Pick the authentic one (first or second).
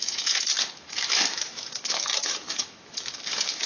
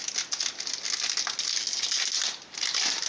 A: second